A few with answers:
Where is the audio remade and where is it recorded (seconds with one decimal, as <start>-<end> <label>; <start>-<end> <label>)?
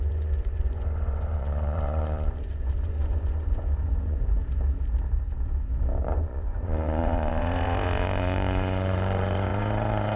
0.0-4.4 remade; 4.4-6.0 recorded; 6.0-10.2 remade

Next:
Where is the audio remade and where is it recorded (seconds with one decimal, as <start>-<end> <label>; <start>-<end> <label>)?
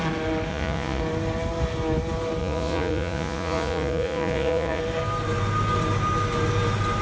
0.0-0.5 recorded; 0.5-1.0 remade; 1.0-2.4 recorded; 2.4-4.8 remade; 4.8-7.0 recorded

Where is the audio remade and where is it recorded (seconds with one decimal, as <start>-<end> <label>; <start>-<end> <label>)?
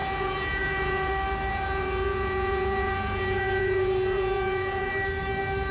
0.0-1.1 remade; 1.1-1.5 recorded; 1.5-4.9 remade; 4.9-5.7 recorded